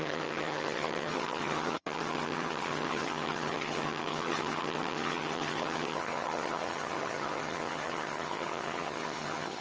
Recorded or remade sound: remade